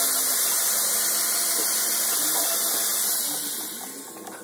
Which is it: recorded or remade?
recorded